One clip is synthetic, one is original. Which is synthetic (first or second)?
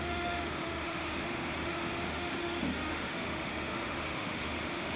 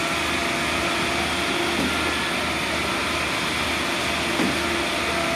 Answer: first